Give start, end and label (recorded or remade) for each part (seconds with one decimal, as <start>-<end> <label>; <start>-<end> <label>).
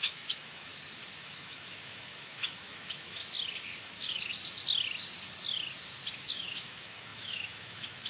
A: 0.0-0.7 remade; 0.7-1.2 recorded; 1.2-3.2 remade; 3.2-3.8 recorded; 3.8-4.3 remade; 4.3-6.2 recorded; 6.2-8.1 remade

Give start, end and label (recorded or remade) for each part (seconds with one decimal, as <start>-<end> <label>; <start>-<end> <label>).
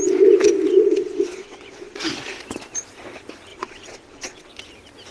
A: 0.0-0.7 recorded; 0.7-2.0 remade; 2.0-3.5 recorded; 3.5-4.5 remade; 4.5-5.1 recorded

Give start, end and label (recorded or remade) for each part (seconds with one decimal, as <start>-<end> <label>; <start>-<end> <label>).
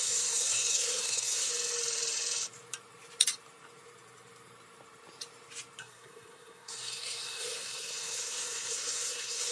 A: 0.0-1.5 remade; 1.5-5.8 recorded; 5.8-9.5 remade